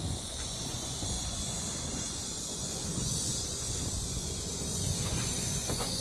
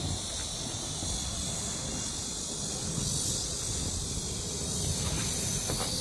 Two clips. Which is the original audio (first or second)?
second